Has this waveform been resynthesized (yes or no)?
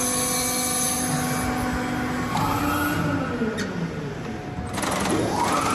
no